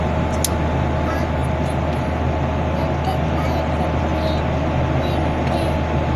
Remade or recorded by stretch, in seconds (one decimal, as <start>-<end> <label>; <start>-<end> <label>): 0.0-6.2 recorded